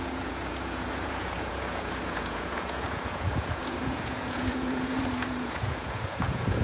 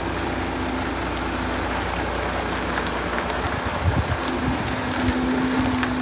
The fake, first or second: first